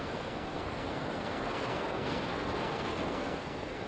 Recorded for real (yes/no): no